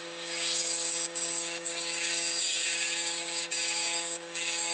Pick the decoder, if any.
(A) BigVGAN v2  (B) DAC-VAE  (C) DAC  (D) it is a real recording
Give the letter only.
C